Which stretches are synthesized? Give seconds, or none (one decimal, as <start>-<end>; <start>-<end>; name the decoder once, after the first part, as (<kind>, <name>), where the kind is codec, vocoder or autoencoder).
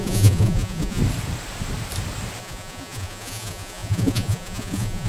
0.0-1.0 (vocoder, Vocos); 2.4-5.1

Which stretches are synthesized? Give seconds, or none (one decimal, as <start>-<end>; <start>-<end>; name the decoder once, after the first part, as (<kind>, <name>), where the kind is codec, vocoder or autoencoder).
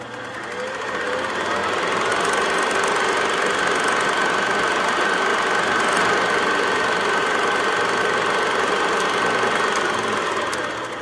none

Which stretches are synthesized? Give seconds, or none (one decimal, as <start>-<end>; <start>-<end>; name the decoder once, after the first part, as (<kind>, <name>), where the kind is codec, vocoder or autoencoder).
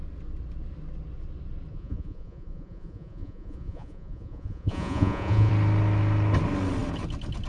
1.7-5.5 (vocoder, Vocos)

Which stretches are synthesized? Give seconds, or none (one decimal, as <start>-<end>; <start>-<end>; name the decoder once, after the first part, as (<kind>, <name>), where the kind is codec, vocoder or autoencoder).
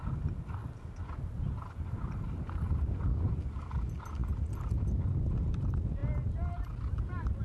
none